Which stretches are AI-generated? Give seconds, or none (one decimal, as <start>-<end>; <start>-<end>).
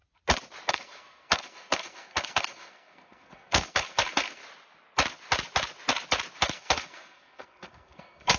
0.7-4.4; 6.4-8.4